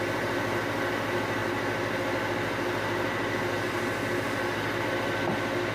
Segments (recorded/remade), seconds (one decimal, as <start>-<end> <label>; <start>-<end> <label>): 0.0-5.7 recorded